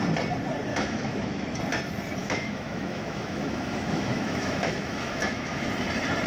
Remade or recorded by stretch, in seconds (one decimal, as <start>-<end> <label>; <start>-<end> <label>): 0.0-0.7 recorded; 0.7-1.6 remade; 1.6-2.2 recorded; 2.2-5.7 remade; 5.7-6.3 recorded